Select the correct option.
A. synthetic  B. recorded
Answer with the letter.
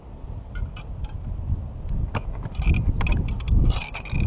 B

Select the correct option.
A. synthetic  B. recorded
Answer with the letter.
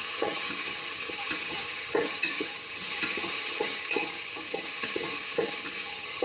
A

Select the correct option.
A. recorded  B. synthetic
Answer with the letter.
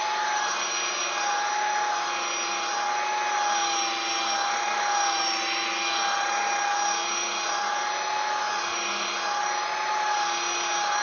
A